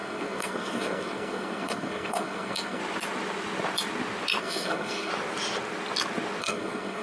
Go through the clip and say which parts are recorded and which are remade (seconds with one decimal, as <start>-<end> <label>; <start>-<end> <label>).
0.0-2.8 remade; 2.8-4.4 recorded; 4.4-5.1 remade; 5.1-6.4 recorded; 6.4-7.0 remade